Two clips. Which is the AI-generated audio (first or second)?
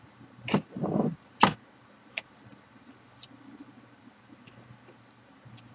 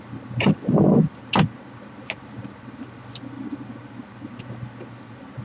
first